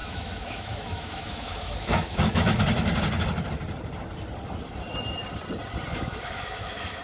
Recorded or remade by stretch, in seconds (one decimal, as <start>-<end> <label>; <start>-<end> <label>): 0.0-2.6 remade; 2.6-5.9 recorded; 5.9-7.0 remade